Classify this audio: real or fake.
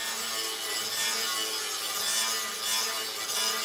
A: real